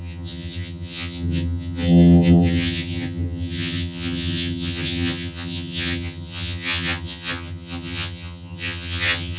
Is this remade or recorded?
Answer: remade